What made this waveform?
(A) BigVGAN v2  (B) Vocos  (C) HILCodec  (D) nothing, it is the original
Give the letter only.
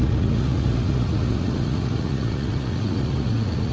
B